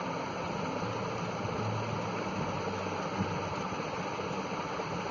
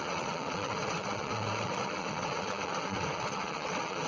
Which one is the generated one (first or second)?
second